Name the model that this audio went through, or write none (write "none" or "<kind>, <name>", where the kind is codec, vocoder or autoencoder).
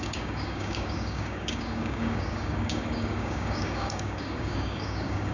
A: codec, DAC